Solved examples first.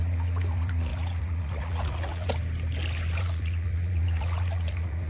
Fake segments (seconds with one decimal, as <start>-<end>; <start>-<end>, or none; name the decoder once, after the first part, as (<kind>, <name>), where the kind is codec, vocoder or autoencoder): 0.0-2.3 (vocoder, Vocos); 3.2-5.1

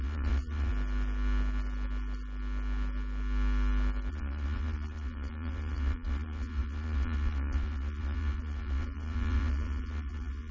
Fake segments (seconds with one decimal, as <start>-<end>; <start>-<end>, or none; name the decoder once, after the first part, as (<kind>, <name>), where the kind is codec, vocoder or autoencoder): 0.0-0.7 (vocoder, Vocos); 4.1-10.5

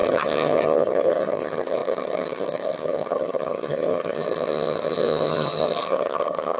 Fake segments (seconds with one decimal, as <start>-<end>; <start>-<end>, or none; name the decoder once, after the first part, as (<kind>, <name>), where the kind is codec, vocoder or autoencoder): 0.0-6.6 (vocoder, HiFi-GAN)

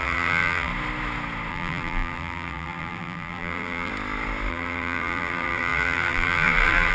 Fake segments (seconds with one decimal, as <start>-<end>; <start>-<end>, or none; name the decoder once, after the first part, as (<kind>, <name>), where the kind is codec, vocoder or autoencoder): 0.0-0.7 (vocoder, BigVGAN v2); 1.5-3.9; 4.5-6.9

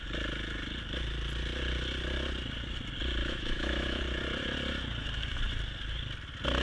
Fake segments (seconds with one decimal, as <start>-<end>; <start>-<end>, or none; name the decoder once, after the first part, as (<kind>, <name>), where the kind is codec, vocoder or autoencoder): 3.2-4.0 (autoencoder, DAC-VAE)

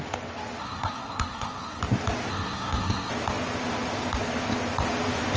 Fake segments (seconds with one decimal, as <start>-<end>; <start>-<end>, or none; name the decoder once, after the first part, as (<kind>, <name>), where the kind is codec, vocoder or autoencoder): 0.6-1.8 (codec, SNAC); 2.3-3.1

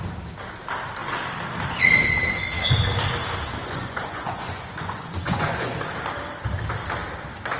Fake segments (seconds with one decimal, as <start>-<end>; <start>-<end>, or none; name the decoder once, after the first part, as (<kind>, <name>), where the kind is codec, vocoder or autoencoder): 3.6-5.9 (vocoder, Vocos)